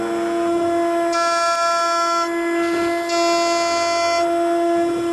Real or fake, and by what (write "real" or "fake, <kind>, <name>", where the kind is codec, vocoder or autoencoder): real